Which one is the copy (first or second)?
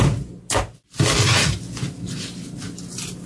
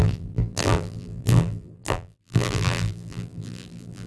second